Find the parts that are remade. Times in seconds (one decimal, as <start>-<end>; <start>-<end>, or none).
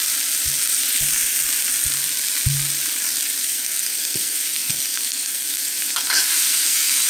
3.4-7.1